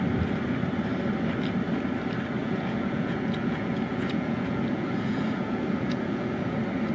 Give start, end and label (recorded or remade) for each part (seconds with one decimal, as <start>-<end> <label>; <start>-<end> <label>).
0.0-2.4 recorded; 2.4-6.5 remade; 6.5-6.9 recorded